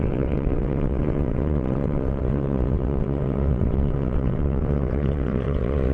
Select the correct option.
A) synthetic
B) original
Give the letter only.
A